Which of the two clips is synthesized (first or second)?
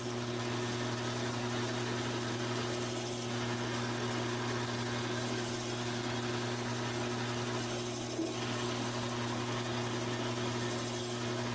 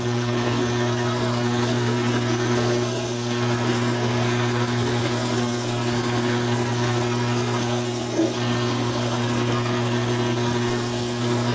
second